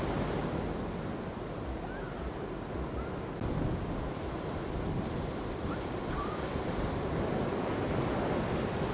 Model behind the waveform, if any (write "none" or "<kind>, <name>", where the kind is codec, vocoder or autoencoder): none